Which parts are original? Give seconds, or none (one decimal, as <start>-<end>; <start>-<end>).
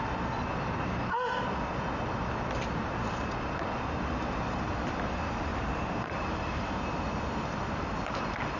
0.0-5.5; 7.0-8.6